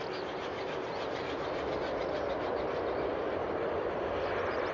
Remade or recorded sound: recorded